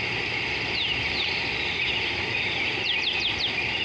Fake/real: real